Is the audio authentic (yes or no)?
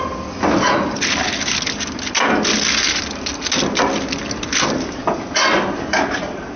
yes